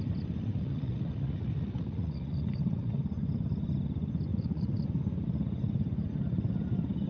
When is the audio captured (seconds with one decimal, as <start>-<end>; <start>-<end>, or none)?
0.0-0.4; 2.9-4.3; 4.9-7.1